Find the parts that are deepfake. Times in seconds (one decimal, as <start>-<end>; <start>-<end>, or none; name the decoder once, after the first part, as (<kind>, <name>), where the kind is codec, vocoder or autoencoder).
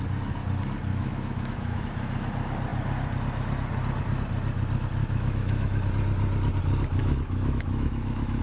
0.9-1.8 (autoencoder, DAC-VAE); 5.0-5.9; 7.0-8.4